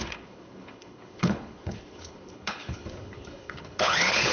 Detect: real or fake fake